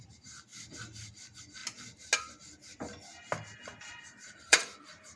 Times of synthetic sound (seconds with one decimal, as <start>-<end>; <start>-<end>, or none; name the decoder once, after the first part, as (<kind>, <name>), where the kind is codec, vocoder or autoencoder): 0.0-0.5 (vocoder, BigVGAN v2); 1.2-1.6; 3.9-5.2